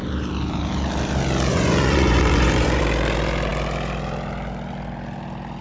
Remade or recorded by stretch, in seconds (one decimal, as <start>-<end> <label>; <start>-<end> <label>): 0.0-1.5 recorded; 1.5-2.8 remade; 2.8-5.6 recorded